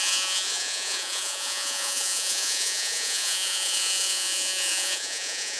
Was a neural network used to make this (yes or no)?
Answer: yes